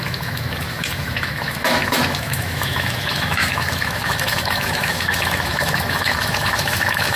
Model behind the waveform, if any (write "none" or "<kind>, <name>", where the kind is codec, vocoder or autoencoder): autoencoder, DAC-VAE